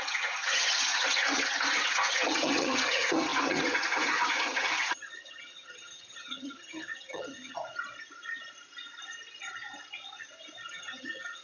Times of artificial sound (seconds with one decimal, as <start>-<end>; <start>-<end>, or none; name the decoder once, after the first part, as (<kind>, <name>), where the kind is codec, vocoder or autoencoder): 0.0-7.6 (vocoder, HiFi-GAN); 10.7-11.4